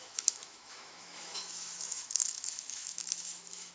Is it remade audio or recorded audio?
remade